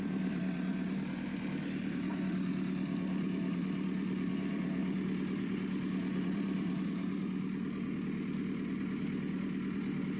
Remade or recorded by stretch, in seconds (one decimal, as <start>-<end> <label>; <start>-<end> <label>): 0.0-10.2 remade